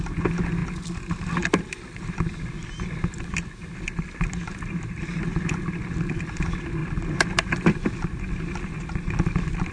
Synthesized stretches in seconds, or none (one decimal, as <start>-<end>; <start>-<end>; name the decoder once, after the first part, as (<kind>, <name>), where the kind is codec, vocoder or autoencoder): none

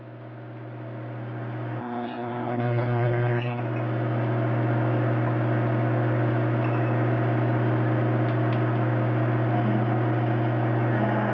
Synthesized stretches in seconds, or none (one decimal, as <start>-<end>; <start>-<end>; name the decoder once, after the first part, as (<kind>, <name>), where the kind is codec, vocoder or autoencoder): 1.8-3.6 (codec, SNAC)

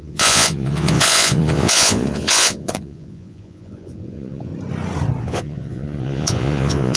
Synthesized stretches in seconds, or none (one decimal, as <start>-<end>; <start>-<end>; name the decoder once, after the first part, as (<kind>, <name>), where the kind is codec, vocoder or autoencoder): 0.0-4.5 (vocoder, Vocos); 5.2-7.0

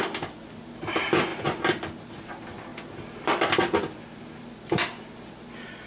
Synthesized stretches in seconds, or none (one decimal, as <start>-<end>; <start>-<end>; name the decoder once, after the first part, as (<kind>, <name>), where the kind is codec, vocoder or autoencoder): none

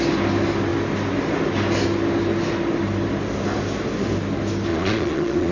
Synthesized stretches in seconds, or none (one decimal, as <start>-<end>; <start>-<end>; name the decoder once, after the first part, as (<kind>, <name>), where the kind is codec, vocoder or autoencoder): 4.7-5.5 (vocoder, Vocos)

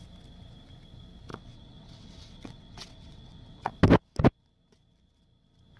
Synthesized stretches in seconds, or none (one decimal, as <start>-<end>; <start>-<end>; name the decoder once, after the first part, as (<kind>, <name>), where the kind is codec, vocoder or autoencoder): 1.3-3.7 (vocoder, WaveNeXt)

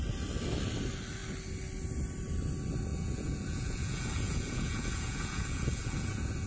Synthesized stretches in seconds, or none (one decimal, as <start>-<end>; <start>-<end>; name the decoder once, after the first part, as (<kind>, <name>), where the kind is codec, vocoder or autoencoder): 2.9-6.5 (vocoder, Vocos)

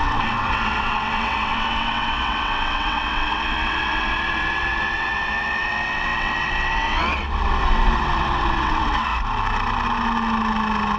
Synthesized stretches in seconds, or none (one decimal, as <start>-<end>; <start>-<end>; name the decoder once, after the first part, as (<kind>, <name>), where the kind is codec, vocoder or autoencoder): 0.0-9.1 (vocoder, WaveNeXt)